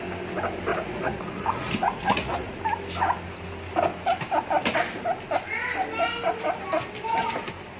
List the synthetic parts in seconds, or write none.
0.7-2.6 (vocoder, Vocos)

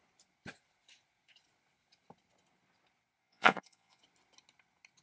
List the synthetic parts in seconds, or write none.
3.2-4.0 (vocoder, Vocos)

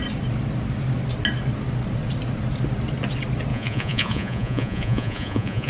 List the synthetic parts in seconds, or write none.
3.5-5.7 (vocoder, Vocos)

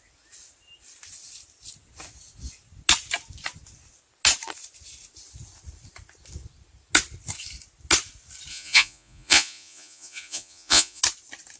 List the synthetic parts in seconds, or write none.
8.5-11.0 (vocoder, Vocos)

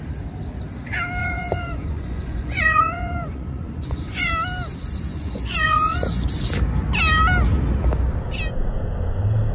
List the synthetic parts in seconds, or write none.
1.2-4.3 (vocoder, Vocos); 5.1-6.3

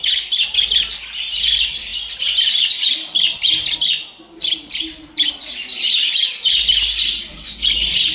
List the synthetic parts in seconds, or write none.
none